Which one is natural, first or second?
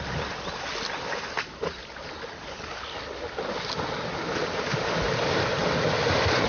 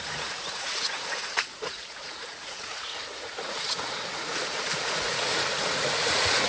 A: first